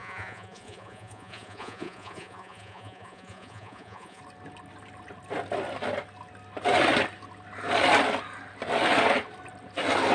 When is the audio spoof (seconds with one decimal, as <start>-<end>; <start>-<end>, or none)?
0.0-4.2

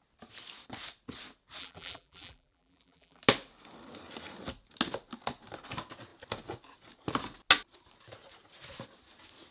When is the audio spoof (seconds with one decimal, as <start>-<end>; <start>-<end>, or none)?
1.6-3.2